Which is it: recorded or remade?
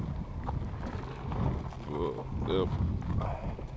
recorded